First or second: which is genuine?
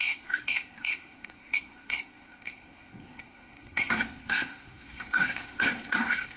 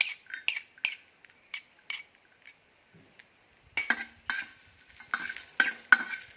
second